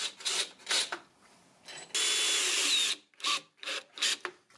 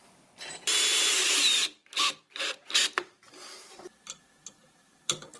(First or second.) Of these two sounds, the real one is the first